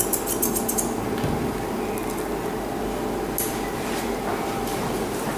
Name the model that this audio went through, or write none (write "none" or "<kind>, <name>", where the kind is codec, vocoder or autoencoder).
none